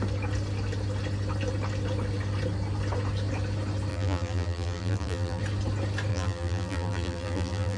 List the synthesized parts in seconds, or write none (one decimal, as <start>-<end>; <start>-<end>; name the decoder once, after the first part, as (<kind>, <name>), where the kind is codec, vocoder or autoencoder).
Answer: 3.9-5.4 (vocoder, BigVGAN v2); 6.1-7.8